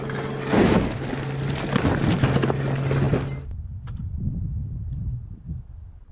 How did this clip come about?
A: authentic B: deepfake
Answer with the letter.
A